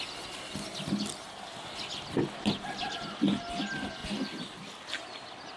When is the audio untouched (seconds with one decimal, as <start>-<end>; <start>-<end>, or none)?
0.0-5.6